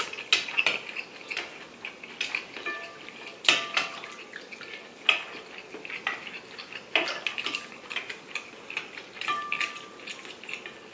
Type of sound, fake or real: real